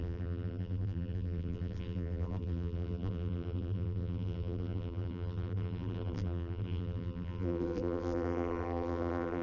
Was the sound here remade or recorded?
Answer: remade